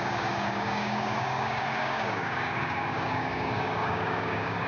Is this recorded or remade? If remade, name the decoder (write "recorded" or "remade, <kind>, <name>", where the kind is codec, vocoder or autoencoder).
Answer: remade, codec, DAC